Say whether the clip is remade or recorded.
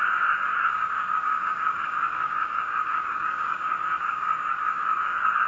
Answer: remade